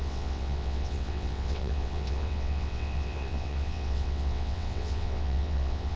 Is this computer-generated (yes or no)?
yes